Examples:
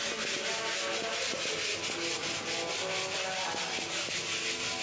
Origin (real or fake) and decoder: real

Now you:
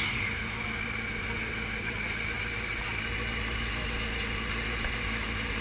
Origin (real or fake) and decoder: real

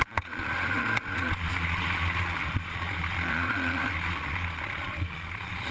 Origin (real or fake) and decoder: fake, vocoder, Vocos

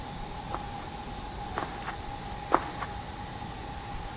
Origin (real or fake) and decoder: real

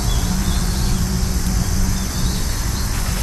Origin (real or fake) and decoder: fake, vocoder, Vocos